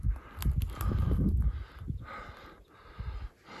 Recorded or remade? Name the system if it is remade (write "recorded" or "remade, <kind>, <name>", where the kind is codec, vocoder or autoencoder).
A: recorded